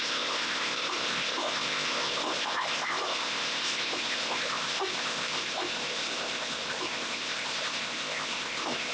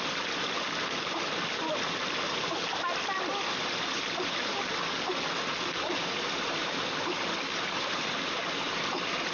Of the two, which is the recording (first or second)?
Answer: second